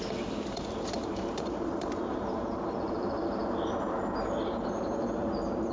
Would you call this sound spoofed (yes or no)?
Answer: yes